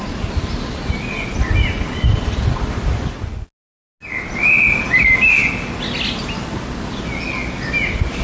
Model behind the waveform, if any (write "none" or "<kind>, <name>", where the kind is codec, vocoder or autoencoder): none